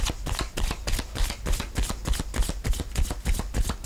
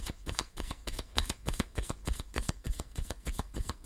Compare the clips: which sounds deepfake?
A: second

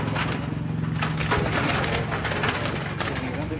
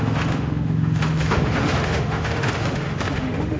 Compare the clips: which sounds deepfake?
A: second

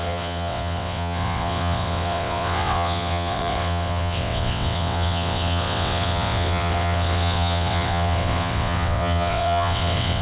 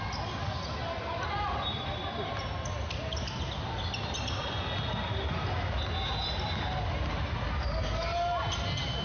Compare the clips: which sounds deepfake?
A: first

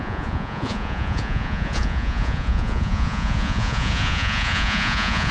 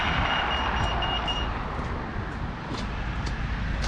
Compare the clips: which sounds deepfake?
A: first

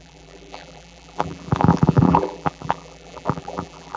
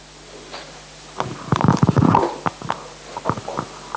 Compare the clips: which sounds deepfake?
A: first